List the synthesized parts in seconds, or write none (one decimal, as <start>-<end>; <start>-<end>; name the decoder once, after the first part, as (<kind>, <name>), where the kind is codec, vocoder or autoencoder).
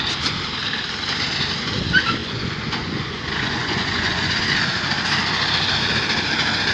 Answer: 2.2-4.4 (vocoder, Vocos)